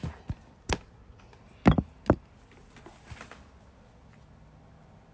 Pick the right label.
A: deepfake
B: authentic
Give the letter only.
B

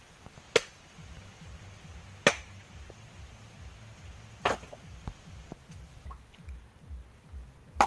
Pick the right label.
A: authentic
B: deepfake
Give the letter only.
A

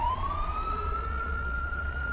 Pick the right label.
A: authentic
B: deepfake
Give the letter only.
B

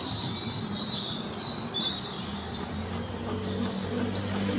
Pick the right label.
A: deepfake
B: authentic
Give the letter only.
B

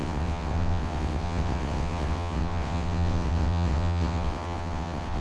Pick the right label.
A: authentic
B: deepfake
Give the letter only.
B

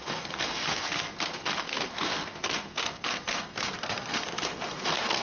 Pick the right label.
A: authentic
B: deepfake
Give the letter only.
B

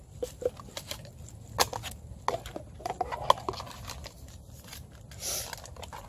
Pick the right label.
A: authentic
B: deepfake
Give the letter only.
A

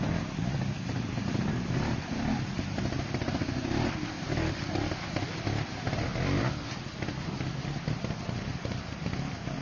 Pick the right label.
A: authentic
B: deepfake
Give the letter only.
A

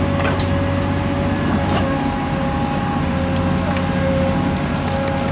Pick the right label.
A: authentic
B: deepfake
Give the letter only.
A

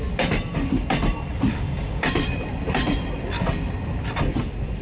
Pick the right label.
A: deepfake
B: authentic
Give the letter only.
B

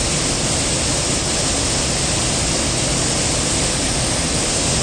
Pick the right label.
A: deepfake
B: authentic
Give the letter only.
B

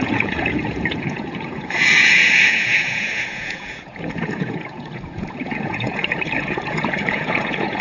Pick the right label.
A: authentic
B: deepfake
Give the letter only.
B